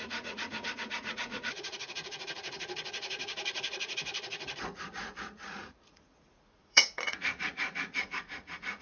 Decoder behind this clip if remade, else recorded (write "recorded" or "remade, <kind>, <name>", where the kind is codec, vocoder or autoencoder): remade, vocoder, Vocos